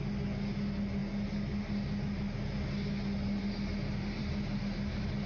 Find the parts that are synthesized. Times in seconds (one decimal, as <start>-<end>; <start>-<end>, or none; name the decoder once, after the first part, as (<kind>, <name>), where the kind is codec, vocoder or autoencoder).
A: none